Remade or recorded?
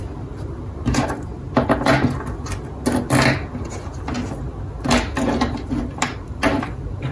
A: recorded